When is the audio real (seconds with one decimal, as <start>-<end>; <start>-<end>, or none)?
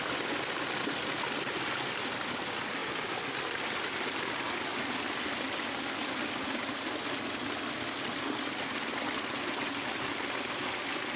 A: 0.0-11.2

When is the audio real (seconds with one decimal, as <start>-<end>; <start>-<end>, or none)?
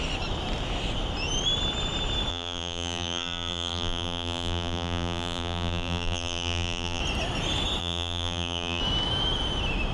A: 0.0-2.3; 7.0-7.8; 8.8-9.9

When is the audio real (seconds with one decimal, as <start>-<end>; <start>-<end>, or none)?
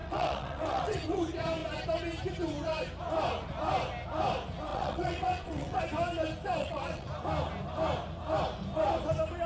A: 1.2-4.7; 5.8-6.6; 7.1-9.5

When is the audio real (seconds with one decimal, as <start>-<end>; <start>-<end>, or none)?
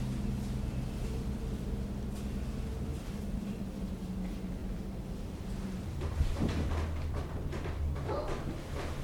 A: 0.0-2.9; 3.9-4.6; 8.5-9.0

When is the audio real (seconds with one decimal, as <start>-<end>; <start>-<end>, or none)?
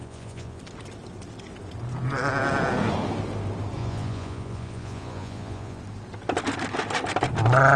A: 0.6-3.8; 5.8-7.8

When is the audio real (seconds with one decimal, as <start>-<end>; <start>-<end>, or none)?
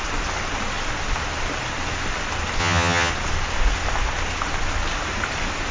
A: 0.0-2.6; 3.1-5.7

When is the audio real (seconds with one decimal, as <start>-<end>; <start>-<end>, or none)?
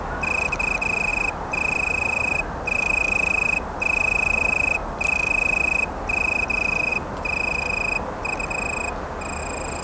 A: 0.0-1.1; 5.0-9.8